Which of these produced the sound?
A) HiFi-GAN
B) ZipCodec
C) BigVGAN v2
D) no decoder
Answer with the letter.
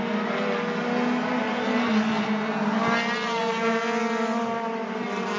D